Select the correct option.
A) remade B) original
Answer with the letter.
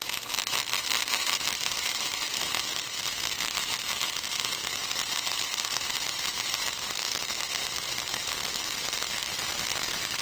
A